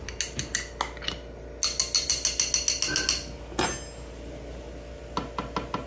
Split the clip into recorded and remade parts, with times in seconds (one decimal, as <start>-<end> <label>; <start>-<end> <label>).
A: 0.0-5.9 recorded